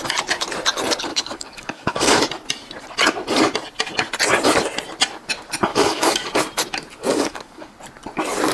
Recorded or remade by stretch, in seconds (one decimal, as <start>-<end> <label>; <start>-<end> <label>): 0.0-1.1 recorded; 1.1-2.2 remade; 2.2-5.7 recorded; 5.7-6.3 remade; 6.3-7.1 recorded; 7.1-7.7 remade; 7.7-8.5 recorded

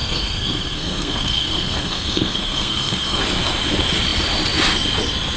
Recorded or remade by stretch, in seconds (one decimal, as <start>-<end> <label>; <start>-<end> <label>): 0.0-3.2 remade; 3.2-5.4 recorded